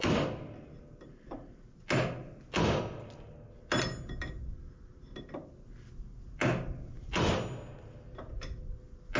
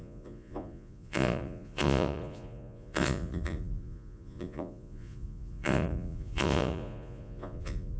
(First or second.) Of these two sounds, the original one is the first